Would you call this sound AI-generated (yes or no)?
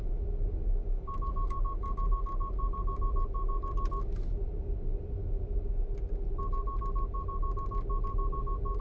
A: no